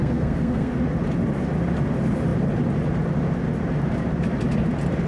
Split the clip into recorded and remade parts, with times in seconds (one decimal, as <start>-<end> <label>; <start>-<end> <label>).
0.0-0.7 remade; 0.7-5.1 recorded